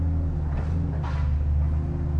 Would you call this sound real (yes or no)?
yes